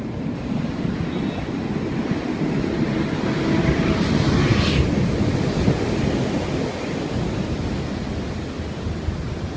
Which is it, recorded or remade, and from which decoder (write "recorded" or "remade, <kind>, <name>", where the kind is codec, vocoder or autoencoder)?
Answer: recorded